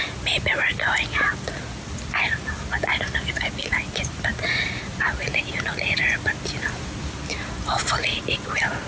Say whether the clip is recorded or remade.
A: recorded